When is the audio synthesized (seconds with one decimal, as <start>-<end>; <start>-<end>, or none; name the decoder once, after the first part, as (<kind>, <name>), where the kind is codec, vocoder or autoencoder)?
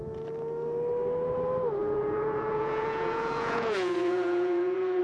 1.8-5.0 (vocoder, Vocos)